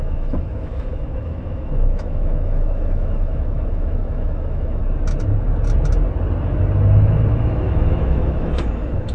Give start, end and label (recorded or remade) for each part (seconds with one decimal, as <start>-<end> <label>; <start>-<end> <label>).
0.0-4.8 remade; 4.8-7.3 recorded; 7.3-9.1 remade